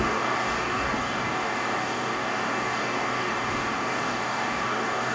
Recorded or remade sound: remade